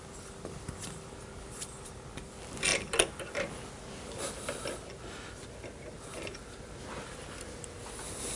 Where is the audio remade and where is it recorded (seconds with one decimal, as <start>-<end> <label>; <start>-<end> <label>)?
0.0-8.4 recorded